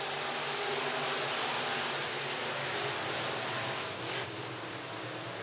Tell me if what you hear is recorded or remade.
recorded